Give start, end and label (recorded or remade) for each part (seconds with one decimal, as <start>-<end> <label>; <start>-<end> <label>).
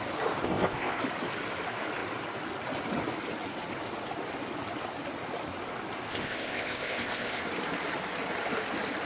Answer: 0.0-0.4 recorded; 0.4-1.0 remade; 1.0-6.1 recorded; 6.1-7.4 remade; 7.4-9.1 recorded